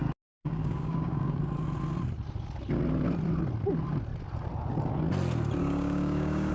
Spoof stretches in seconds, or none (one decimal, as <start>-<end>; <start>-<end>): 0.0-1.4; 5.6-6.5